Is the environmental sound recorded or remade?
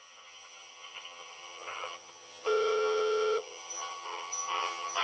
remade